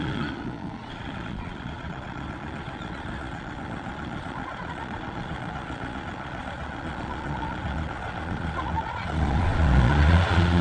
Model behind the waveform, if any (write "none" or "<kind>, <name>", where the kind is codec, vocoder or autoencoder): vocoder, Vocos